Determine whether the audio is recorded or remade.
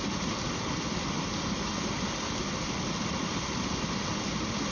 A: recorded